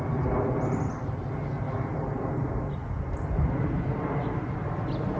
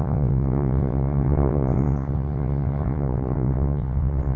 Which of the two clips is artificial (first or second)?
second